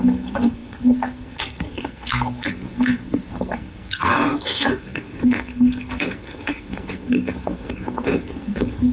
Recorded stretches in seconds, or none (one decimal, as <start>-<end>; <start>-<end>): none